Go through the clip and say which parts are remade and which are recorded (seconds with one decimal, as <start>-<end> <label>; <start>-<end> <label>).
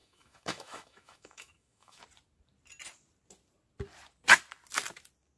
0.0-2.0 remade; 2.0-5.4 recorded